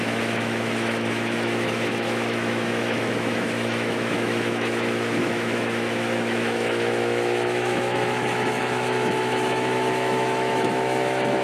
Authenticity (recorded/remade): remade